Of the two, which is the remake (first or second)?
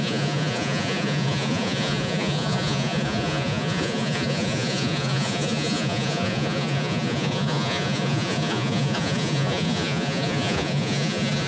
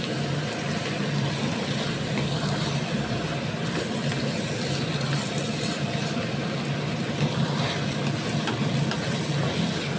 first